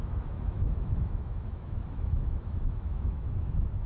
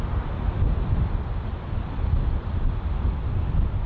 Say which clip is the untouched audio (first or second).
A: second